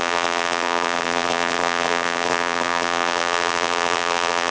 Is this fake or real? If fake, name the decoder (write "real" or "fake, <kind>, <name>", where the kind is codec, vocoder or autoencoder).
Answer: fake, vocoder, BigVGAN v2